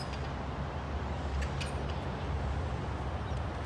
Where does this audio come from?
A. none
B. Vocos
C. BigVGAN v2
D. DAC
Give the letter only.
A